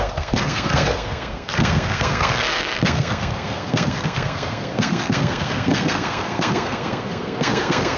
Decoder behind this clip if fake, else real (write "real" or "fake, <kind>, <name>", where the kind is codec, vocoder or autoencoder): fake, codec, SNAC